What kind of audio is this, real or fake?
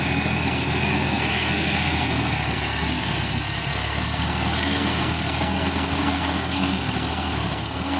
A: fake